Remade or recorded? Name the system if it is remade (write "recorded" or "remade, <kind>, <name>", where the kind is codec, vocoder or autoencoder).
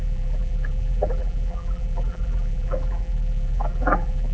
remade, vocoder, BigVGAN v2